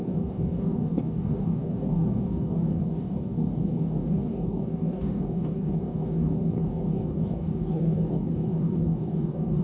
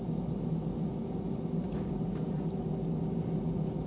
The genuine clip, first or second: second